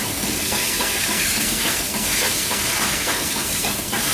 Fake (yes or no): yes